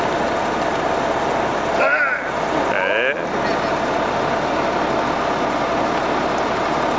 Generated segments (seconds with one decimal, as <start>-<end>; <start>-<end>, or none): none